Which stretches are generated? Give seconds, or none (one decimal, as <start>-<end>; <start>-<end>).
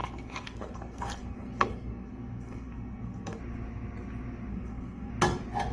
0.0-3.4; 4.5-5.1